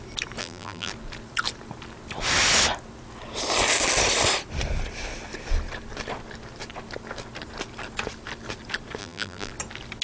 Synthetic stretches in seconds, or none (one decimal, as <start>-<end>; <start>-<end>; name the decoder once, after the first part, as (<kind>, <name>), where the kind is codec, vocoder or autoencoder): 0.4-0.9 (vocoder, BigVGAN v2); 9.0-9.5

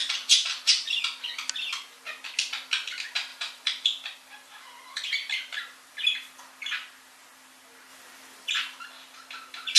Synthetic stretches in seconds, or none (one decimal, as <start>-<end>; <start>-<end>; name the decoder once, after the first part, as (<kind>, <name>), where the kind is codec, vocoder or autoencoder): 0.0-1.0 (vocoder, BigVGAN v2); 3.3-6.0; 7.9-8.5

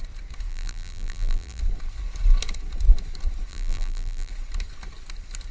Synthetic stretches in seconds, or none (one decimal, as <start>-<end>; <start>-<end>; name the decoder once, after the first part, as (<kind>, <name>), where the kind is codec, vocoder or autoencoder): 0.5-1.6 (vocoder, BigVGAN v2); 3.5-4.3